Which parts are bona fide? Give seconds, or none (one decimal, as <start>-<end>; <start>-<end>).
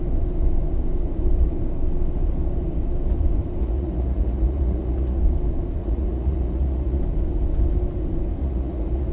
0.0-3.6; 5.2-5.8; 7.0-8.4